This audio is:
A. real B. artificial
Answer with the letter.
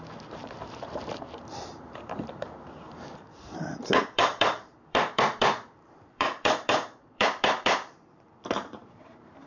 B